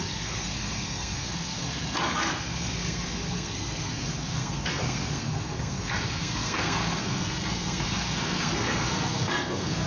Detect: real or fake fake